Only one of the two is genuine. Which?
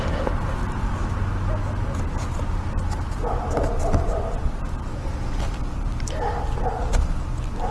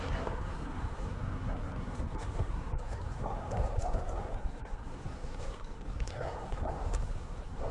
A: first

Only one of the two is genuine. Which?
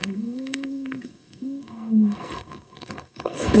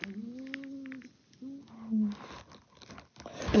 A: second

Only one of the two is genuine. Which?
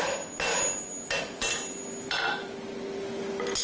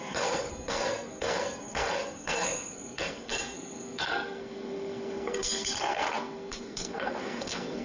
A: first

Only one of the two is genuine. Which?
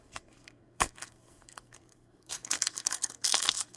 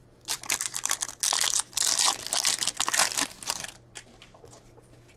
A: second